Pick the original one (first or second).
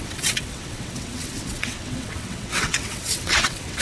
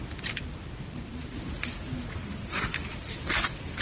second